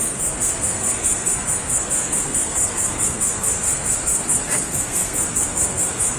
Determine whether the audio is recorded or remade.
remade